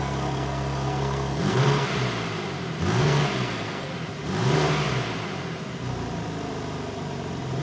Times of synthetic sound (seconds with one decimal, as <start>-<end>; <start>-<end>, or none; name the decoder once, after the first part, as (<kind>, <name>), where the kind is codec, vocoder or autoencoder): 0.0-1.9 (codec, SNAC); 3.0-3.9